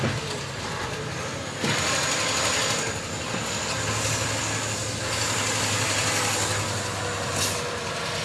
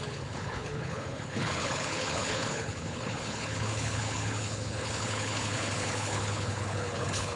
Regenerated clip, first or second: second